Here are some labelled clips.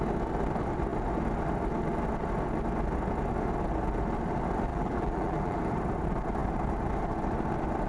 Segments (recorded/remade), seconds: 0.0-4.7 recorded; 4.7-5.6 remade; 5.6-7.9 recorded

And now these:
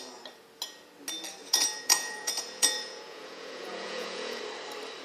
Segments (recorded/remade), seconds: 0.0-1.4 recorded; 1.4-4.4 remade; 4.4-5.0 recorded

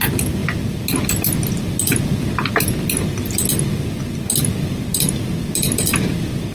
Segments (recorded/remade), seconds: 0.0-6.5 recorded